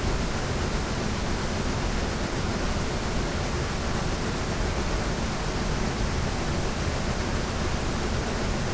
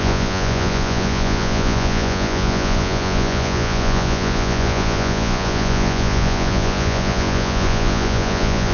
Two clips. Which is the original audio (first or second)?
first